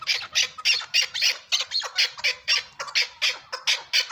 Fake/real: real